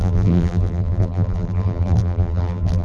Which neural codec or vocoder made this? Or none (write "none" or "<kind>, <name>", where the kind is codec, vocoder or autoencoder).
vocoder, BigVGAN v2